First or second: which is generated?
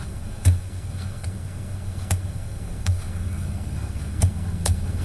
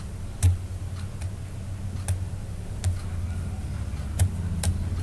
first